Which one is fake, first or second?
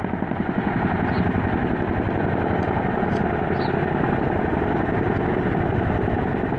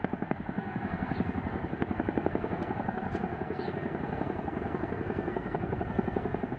second